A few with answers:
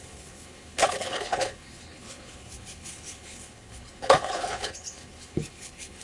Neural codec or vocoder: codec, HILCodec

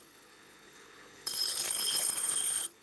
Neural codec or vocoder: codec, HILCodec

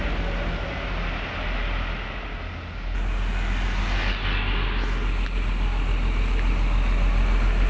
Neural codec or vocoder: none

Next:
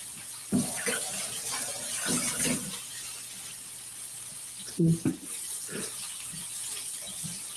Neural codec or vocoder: none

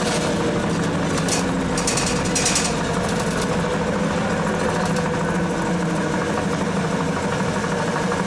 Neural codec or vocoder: none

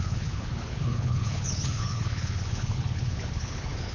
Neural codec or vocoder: codec, HILCodec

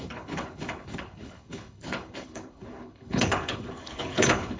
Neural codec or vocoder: codec, HILCodec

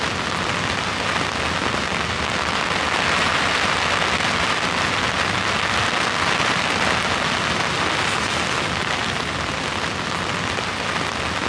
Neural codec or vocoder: none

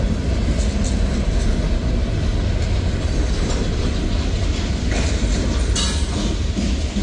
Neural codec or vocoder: none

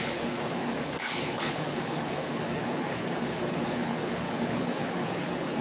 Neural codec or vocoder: codec, HILCodec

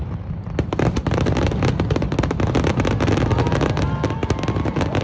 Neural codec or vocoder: none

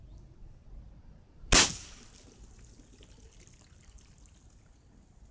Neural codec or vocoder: none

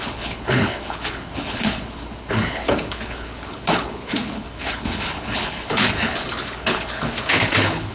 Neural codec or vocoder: codec, HILCodec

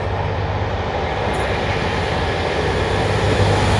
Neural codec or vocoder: none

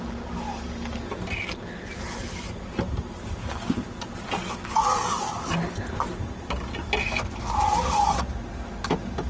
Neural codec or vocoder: none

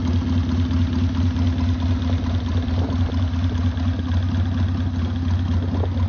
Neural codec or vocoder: none